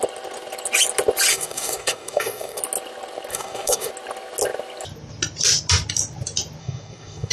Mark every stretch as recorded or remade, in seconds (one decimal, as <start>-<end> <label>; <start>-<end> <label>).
0.0-1.3 recorded; 1.3-2.6 remade; 2.6-3.3 recorded; 3.3-3.9 remade; 3.9-6.6 recorded; 6.6-7.3 remade